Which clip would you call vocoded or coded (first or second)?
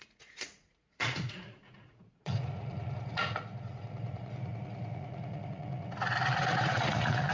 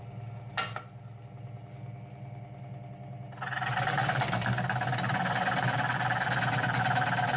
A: first